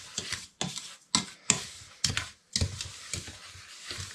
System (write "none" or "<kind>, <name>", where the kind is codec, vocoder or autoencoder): none